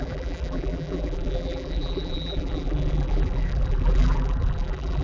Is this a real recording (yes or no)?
no